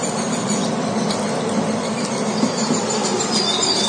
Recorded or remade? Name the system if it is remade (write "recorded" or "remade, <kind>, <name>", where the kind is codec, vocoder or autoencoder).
recorded